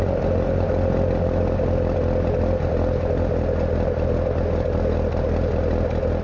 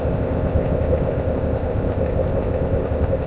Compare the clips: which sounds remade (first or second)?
second